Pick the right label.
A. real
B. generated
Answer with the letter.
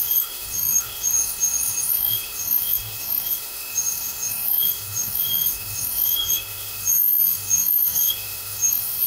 B